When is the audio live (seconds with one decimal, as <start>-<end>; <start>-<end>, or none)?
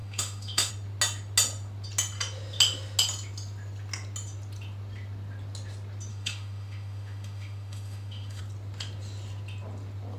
0.7-6.1; 8.4-10.2